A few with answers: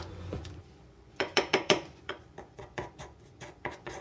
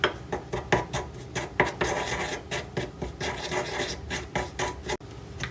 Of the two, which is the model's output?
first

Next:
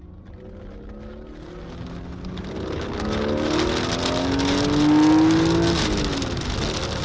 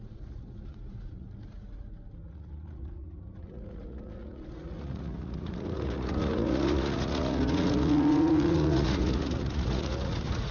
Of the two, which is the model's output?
second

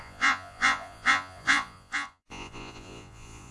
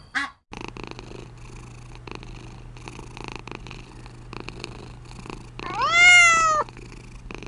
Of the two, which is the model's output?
first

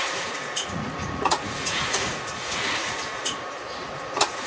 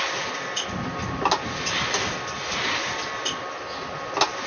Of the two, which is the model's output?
first